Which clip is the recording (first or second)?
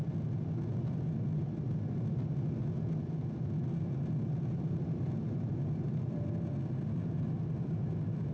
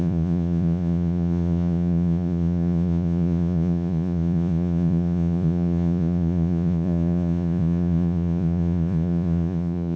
first